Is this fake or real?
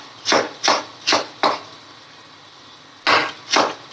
real